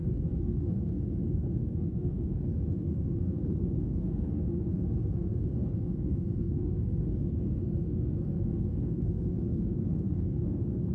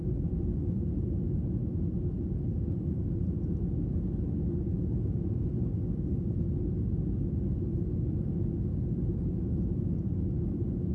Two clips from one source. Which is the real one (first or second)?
second